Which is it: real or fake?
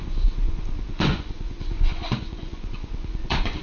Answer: fake